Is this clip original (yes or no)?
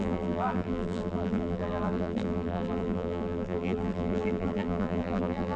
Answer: no